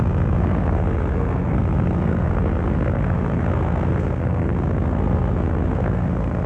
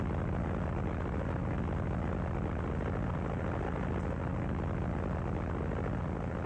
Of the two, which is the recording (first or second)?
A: second